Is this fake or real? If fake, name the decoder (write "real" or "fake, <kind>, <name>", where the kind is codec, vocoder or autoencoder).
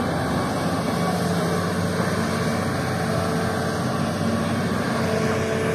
real